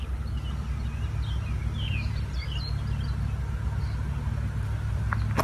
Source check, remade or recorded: recorded